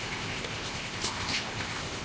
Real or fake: fake